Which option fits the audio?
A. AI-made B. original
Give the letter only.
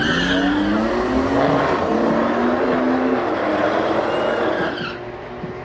B